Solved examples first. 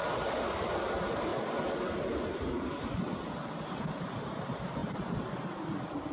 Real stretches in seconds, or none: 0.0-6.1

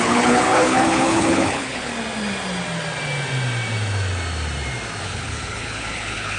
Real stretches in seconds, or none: 1.9-5.0

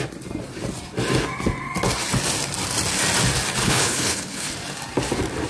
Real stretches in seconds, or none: 0.0-3.6; 4.5-5.5

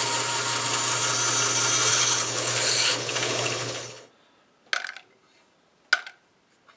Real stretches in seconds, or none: 0.0-1.9; 4.1-6.8

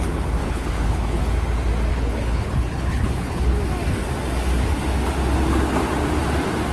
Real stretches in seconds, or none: 0.0-0.4; 1.2-1.9; 3.6-6.7

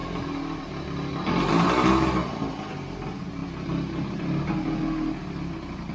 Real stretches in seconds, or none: 0.0-5.9